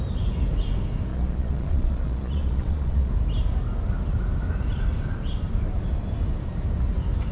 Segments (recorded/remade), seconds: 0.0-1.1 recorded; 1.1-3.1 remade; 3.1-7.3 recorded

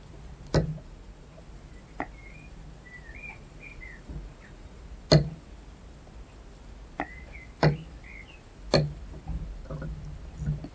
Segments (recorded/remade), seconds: 0.0-0.7 recorded; 0.7-1.4 remade; 1.4-3.2 recorded; 3.2-4.8 remade; 4.8-10.7 recorded

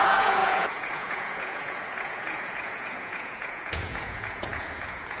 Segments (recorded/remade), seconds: 0.0-5.2 remade